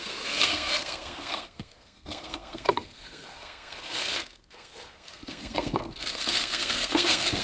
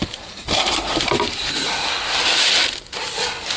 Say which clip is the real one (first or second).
second